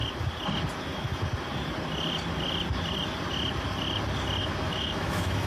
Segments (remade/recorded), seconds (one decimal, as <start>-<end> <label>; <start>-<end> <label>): 0.0-0.8 recorded; 0.8-1.3 remade; 1.3-4.4 recorded; 4.4-5.5 remade